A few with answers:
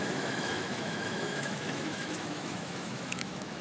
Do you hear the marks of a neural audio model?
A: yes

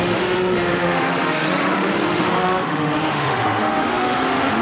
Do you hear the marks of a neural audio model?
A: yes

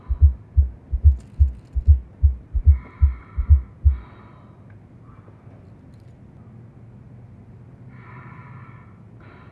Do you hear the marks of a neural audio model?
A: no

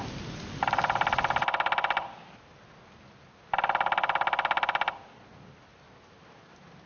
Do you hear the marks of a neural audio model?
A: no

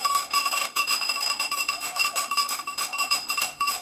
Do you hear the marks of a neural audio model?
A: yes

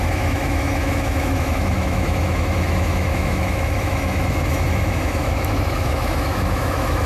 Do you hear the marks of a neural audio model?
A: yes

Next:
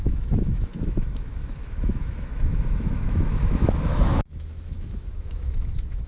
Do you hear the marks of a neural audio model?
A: yes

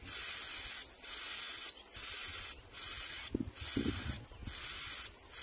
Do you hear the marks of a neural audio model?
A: no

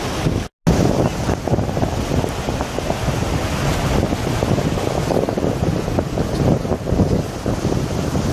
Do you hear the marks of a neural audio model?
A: no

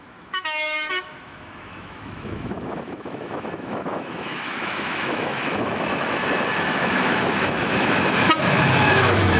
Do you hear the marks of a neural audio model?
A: yes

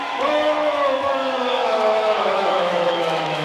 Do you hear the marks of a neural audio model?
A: yes